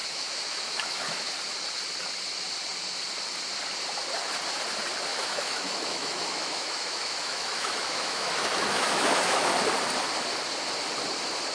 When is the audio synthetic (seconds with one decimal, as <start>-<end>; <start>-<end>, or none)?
0.0-1.3; 5.1-9.5